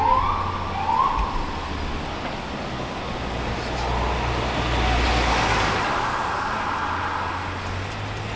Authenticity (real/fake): real